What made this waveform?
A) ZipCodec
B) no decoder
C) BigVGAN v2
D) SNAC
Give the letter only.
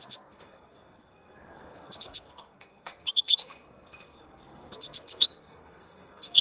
D